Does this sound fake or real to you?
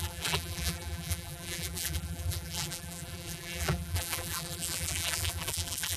fake